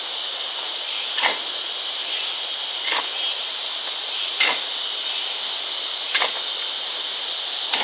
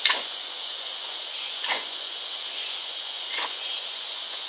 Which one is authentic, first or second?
first